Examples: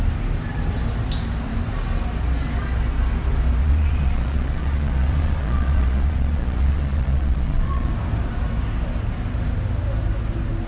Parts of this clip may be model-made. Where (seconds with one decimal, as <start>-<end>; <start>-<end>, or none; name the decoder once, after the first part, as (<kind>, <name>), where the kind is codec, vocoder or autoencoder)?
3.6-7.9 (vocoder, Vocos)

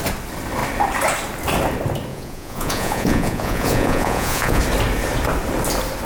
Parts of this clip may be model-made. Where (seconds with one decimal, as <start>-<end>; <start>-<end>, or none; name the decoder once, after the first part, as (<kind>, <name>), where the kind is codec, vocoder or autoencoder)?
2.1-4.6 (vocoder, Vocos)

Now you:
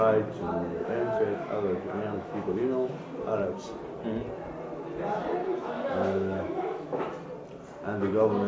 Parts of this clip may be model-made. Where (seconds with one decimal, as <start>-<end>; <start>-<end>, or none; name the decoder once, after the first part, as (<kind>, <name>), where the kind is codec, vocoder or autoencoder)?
0.7-2.9 (autoencoder, DAC-VAE); 5.4-7.1